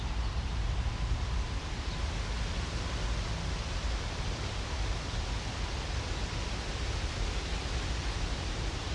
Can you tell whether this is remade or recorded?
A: recorded